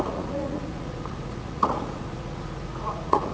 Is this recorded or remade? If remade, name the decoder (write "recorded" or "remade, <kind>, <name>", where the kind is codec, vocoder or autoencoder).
remade, vocoder, Vocos